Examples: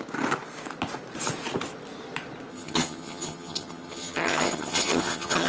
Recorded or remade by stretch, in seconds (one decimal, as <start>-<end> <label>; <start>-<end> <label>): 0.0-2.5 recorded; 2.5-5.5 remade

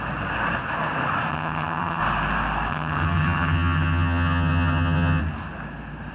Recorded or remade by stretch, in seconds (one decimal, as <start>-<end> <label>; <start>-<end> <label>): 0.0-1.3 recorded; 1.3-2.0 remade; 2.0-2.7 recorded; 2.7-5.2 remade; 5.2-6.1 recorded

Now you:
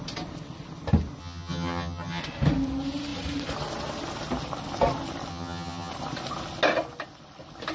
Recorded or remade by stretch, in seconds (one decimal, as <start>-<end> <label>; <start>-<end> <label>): 0.0-1.2 recorded; 1.2-2.2 remade; 2.2-5.3 recorded; 5.3-5.9 remade; 5.9-7.7 recorded

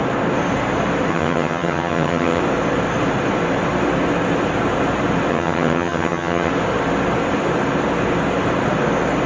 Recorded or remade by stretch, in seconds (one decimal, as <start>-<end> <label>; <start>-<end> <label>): 0.0-1.1 recorded; 1.1-2.4 remade; 2.4-5.3 recorded; 5.3-6.5 remade; 6.5-9.3 recorded